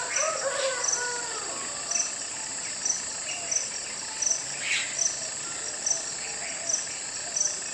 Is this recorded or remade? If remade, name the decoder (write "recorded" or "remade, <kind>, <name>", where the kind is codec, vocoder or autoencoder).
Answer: recorded